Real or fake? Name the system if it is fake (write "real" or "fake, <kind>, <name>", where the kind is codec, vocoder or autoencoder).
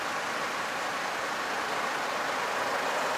real